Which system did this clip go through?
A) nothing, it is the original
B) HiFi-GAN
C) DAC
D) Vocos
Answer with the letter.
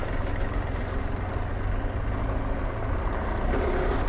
A